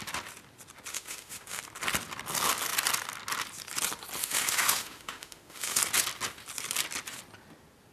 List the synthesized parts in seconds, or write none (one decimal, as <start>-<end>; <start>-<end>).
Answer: 0.9-1.6; 4.2-5.8